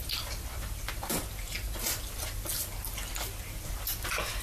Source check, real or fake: real